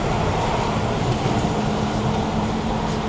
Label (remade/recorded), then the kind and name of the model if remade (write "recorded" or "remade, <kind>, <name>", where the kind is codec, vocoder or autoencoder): recorded